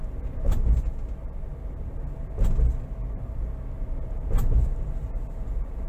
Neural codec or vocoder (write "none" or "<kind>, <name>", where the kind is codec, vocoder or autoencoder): none